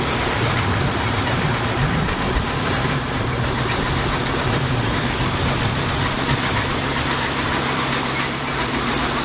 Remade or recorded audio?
remade